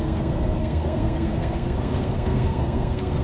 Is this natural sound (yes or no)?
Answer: no